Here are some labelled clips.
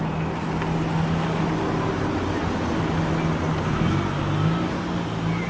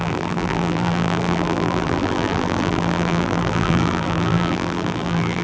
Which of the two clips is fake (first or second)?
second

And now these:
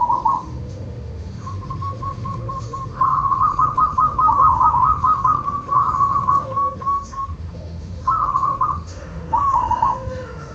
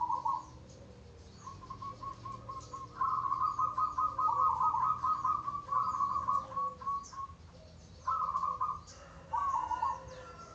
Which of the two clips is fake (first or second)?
first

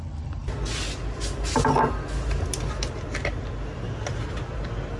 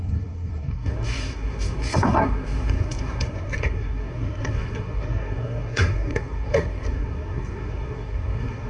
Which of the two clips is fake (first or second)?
second